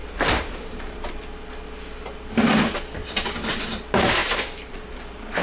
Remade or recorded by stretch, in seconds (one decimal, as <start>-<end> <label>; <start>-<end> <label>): 0.0-1.1 remade; 1.1-3.0 recorded; 3.0-3.7 remade; 3.7-4.2 recorded; 4.2-4.9 remade; 4.9-5.4 recorded